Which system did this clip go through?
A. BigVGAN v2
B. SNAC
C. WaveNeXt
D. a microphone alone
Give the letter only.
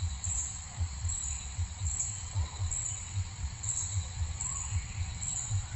C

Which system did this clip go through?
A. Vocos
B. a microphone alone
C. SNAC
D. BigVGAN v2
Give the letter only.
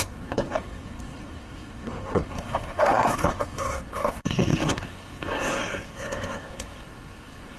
C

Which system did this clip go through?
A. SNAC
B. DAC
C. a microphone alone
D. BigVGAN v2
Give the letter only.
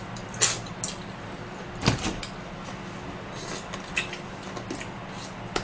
C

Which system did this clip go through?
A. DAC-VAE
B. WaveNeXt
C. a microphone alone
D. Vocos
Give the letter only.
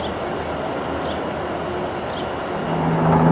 C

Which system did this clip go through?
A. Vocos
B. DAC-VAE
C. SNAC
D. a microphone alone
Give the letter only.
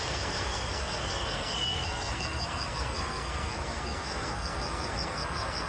C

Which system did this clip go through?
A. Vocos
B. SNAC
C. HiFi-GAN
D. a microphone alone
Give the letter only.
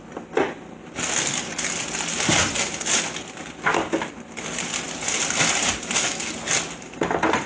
D